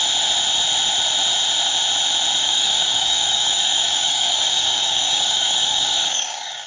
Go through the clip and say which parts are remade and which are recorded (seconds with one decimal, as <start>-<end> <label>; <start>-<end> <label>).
0.0-2.4 recorded; 2.4-6.7 remade